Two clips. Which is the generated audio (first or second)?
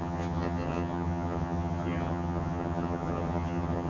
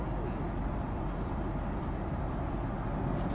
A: first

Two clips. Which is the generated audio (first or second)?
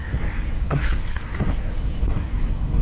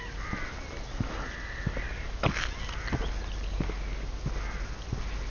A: first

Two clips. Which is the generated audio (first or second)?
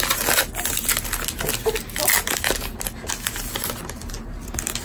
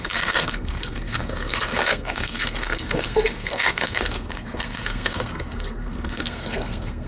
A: second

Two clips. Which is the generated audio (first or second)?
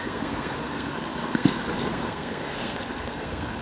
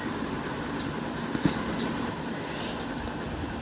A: first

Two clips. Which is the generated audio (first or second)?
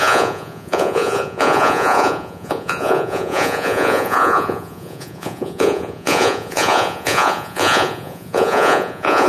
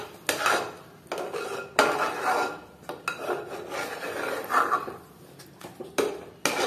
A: first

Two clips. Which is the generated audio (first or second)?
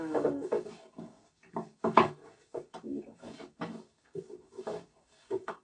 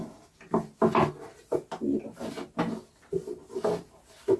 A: first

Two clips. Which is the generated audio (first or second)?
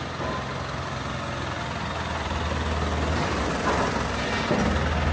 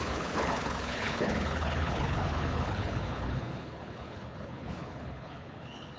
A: second